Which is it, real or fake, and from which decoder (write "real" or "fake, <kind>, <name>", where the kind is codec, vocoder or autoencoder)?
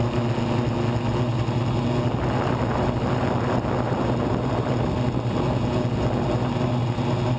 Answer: real